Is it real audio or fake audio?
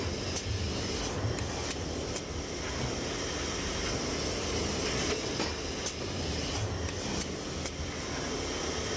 real